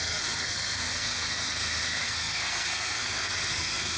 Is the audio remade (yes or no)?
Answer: yes